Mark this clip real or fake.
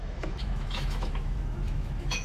fake